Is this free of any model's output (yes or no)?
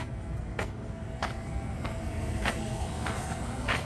no